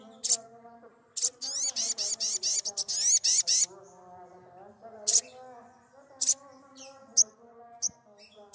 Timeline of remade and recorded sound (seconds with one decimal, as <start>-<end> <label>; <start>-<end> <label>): 0.0-8.5 recorded